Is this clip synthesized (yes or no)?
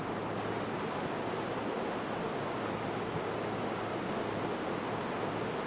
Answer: no